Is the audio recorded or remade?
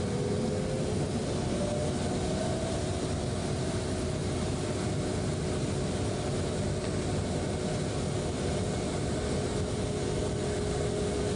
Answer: recorded